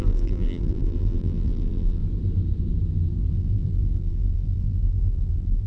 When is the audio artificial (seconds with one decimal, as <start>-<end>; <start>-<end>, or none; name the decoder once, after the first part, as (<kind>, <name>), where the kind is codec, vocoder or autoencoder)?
0.0-2.0 (vocoder, BigVGAN v2); 3.3-5.7